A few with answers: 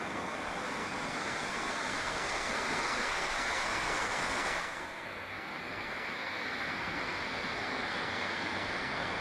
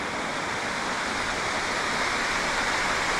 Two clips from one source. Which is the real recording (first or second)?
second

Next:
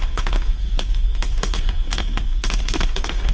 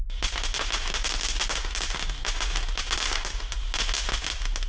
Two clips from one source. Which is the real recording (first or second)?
second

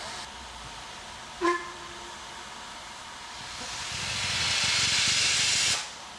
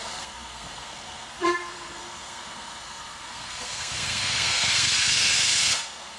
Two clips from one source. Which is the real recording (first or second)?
first